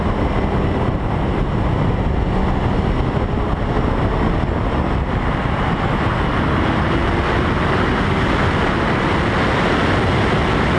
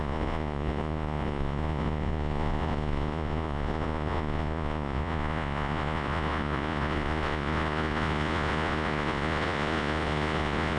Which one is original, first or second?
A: first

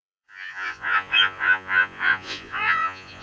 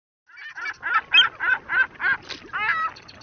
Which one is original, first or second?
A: second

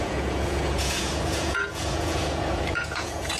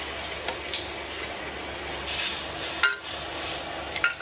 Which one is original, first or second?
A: second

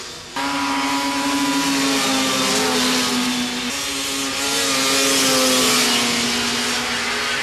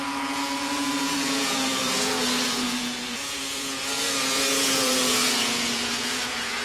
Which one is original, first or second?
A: first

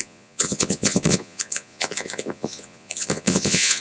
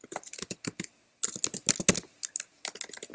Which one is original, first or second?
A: second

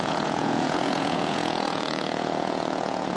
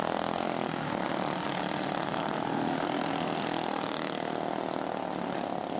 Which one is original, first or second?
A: second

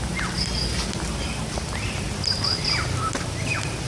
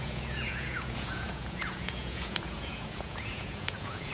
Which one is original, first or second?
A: first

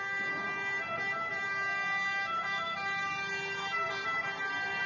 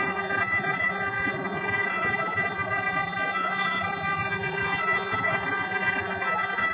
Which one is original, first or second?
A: first